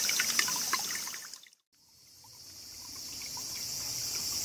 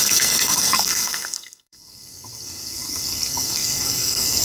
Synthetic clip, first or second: second